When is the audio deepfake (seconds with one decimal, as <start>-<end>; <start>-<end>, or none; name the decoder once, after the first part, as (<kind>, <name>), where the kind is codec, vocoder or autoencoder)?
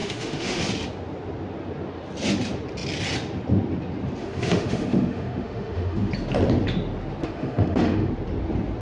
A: 0.0-0.6 (autoencoder, DAC-VAE); 4.2-6.1; 7.2-8.1